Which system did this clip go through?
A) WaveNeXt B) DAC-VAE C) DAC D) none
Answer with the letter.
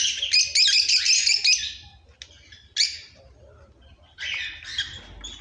D